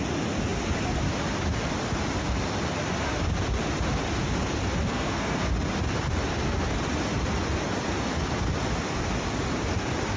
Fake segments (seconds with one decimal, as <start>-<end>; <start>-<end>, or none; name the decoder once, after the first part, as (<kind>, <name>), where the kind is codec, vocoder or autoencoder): 4.9-5.5 (codec, SNAC)